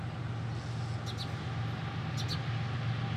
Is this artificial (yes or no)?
no